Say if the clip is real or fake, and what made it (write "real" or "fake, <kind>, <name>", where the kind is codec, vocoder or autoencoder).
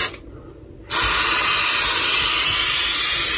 real